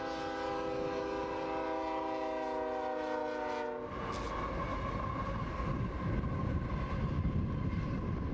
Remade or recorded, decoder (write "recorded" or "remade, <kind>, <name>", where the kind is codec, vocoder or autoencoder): recorded